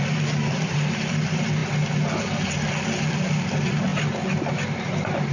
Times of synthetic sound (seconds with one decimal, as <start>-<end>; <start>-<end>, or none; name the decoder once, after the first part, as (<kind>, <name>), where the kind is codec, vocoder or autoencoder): 0.0-1.6 (vocoder, BigVGAN v2); 3.0-3.9; 4.5-5.3